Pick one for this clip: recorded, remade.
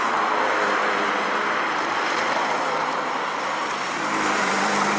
remade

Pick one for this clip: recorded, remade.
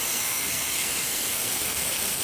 remade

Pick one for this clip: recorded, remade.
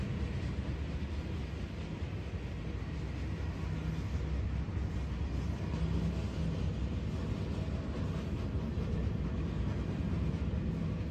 recorded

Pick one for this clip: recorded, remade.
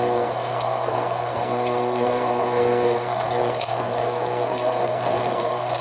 remade